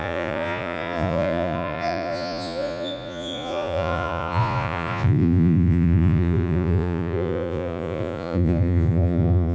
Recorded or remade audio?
remade